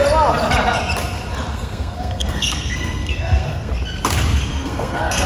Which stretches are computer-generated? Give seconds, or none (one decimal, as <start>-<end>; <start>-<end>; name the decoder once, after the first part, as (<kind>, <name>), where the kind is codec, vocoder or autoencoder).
1.5-3.7 (codec, SNAC); 4.5-5.3